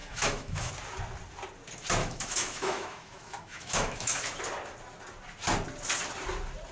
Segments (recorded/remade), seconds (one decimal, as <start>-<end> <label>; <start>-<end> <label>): 0.0-0.7 remade; 0.7-2.0 recorded; 2.0-4.4 remade; 4.4-6.7 recorded